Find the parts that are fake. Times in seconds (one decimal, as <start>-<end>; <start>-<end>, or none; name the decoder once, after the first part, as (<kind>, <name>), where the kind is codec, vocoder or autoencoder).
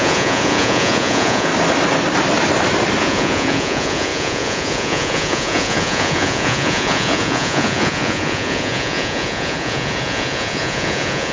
0.0-1.5 (vocoder, Vocos); 3.0-11.3